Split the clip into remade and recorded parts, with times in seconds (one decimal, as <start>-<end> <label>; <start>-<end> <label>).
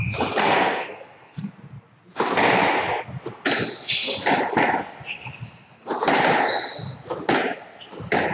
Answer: 0.0-0.4 recorded; 0.4-1.5 remade; 1.5-8.3 recorded